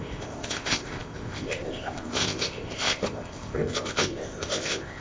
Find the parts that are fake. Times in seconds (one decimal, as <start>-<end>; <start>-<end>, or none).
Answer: 0.0-5.0